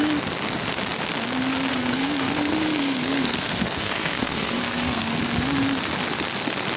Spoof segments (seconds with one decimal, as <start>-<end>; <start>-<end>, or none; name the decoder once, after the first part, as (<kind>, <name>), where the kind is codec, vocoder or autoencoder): 1.7-5.2 (codec, SNAC)